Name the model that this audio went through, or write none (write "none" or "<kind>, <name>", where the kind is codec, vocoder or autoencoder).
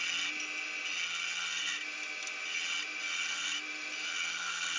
none